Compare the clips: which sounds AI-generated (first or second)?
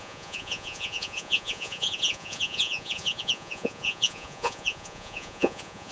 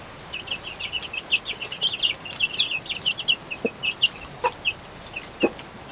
first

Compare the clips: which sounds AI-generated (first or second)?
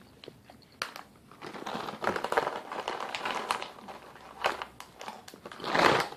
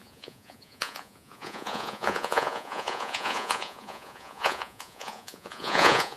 second